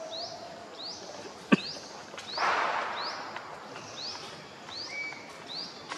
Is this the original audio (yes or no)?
yes